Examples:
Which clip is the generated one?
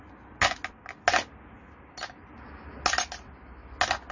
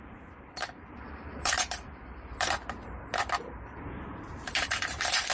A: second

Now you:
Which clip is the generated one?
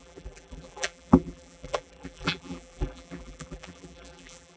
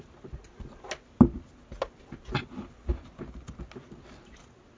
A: first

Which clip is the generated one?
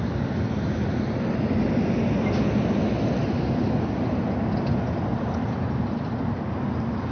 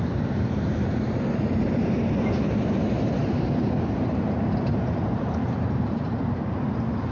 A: second